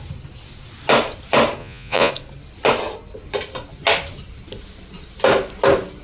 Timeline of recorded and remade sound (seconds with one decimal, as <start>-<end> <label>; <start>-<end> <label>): 0.0-1.6 recorded; 1.6-2.1 remade; 2.1-6.0 recorded